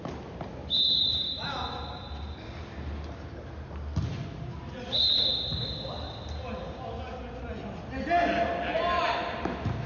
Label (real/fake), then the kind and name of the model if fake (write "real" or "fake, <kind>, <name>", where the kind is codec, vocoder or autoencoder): real